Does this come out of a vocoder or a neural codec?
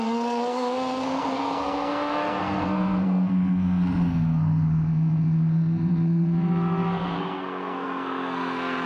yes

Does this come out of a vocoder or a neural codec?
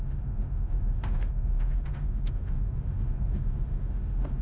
yes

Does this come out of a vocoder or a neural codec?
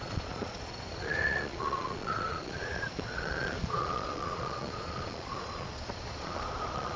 yes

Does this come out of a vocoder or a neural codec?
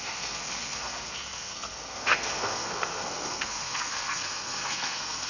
yes